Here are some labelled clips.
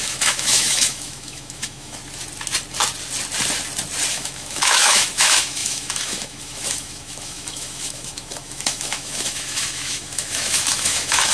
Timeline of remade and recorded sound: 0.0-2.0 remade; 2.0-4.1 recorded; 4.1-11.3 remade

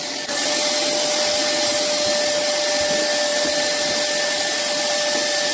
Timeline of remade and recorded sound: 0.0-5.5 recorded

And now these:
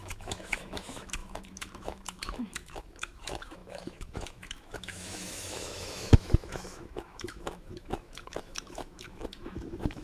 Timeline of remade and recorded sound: 0.0-10.0 remade

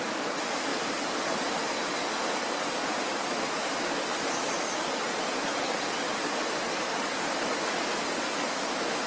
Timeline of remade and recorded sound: 0.0-8.5 recorded; 8.5-9.1 remade

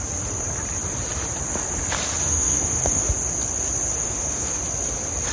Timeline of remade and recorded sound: 0.0-2.2 recorded; 2.2-3.1 remade; 3.1-3.9 recorded; 3.9-4.6 remade; 4.6-5.3 recorded

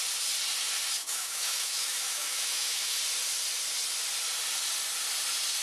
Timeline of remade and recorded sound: 0.0-1.0 recorded; 1.0-3.0 remade; 3.0-5.6 recorded